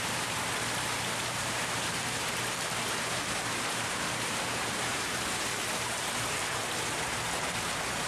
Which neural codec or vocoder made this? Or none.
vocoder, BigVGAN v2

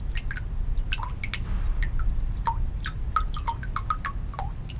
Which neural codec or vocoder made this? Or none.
none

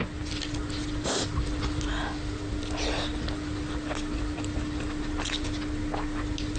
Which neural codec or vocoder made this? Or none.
none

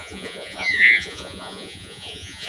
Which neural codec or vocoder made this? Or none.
vocoder, Vocos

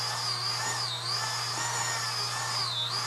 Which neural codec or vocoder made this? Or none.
none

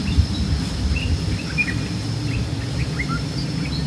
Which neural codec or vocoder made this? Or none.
none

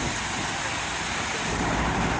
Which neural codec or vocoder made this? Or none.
none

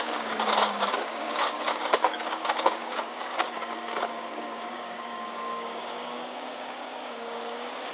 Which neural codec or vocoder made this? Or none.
codec, DAC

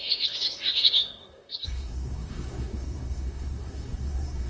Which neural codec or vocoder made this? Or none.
codec, SNAC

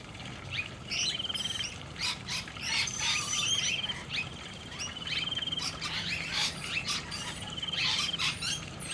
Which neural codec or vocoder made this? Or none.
vocoder, BigVGAN v2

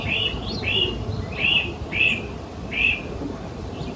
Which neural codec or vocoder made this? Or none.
none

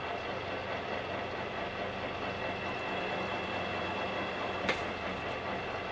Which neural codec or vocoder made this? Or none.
none